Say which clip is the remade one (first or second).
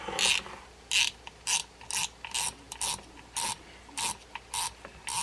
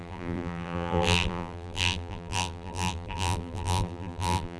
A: second